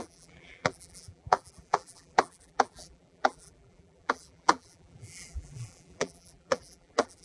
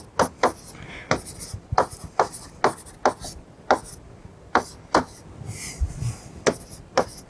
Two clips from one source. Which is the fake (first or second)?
first